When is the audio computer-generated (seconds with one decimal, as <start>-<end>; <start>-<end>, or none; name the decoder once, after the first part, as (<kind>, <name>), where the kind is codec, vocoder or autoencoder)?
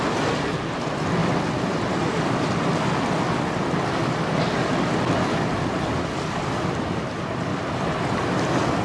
none